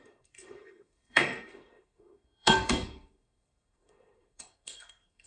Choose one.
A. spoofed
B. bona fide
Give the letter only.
A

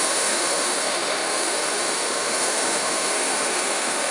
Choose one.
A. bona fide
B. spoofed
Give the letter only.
B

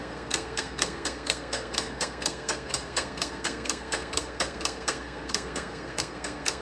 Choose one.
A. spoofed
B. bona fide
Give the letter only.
A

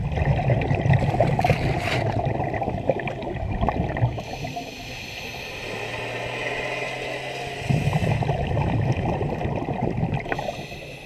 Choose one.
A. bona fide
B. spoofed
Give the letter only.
A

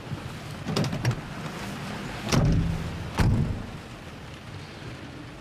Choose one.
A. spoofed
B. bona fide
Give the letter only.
B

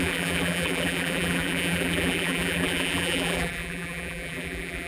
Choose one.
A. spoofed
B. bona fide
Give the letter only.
A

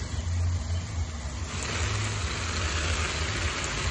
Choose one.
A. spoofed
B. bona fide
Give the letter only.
B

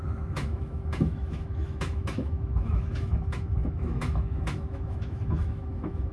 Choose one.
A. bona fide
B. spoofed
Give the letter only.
B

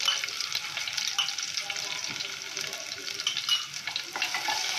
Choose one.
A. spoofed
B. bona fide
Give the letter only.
B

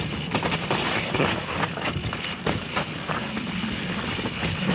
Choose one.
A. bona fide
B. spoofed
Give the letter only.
A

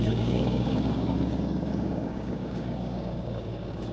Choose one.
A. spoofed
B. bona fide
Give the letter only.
A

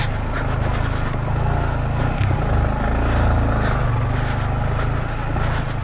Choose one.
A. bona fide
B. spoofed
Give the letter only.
A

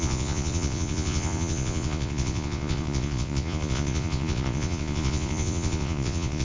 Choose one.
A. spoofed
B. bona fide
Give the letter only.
A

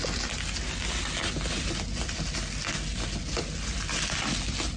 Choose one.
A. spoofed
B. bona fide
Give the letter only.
B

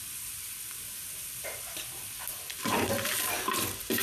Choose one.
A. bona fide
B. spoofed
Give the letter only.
B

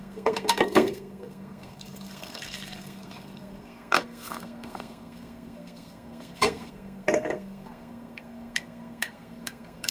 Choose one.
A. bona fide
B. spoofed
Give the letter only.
B